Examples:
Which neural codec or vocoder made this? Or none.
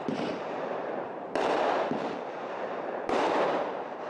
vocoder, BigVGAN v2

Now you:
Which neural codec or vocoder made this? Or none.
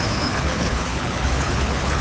codec, HILCodec